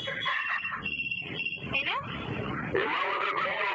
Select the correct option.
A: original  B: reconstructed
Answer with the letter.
B